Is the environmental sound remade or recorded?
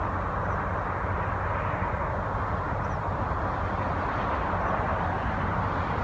recorded